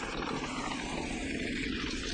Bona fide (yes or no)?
yes